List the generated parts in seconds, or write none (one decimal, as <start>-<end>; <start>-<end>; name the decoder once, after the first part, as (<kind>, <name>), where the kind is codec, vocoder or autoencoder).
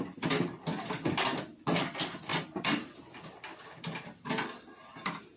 0.7-1.4 (vocoder, BigVGAN v2)